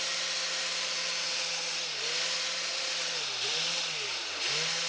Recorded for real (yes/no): yes